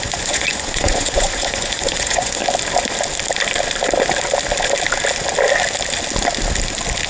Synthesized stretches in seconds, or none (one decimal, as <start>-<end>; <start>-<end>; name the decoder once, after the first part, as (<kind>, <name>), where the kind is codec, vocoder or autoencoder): 0.0-2.4 (vocoder, Vocos)